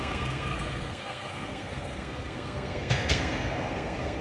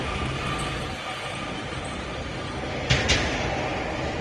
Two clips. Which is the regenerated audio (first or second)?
first